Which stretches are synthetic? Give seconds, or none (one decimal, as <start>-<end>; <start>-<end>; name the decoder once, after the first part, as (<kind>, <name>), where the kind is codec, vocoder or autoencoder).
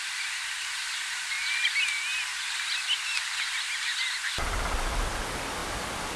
none